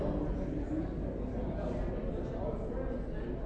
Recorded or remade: recorded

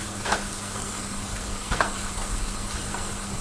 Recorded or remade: remade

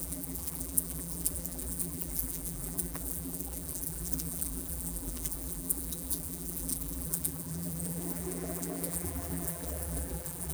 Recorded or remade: remade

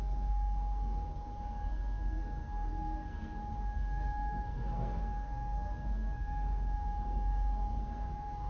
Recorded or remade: remade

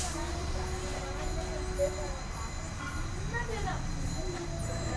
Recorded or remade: recorded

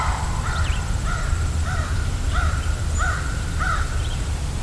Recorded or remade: remade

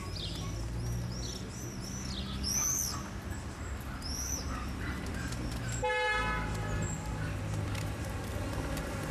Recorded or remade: recorded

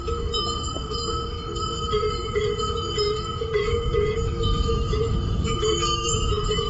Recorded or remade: remade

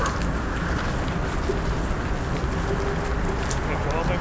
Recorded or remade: recorded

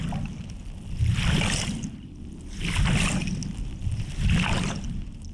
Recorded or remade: recorded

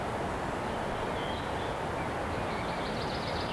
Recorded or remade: recorded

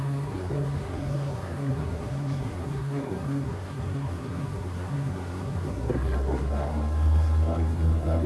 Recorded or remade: remade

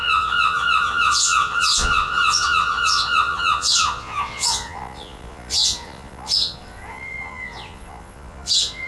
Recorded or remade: remade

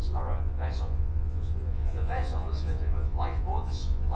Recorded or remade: remade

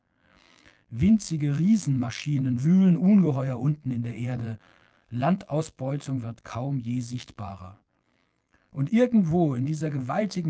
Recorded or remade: remade